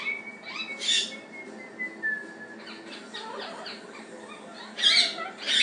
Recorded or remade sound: recorded